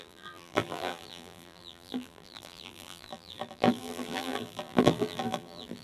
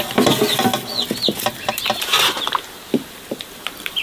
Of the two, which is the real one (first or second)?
second